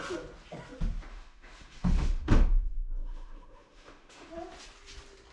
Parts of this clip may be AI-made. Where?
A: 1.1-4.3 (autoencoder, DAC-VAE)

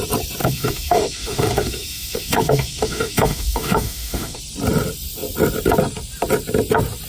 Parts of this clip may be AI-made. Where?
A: 0.4-4.4 (autoencoder, DAC-VAE)

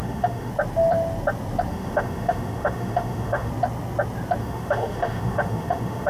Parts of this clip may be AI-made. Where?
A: 0.0-0.5 (autoencoder, DAC-VAE); 1.7-3.5; 4.4-6.1

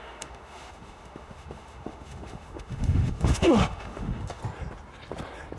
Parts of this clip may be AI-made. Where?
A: 0.0-4.4 (autoencoder, DAC-VAE)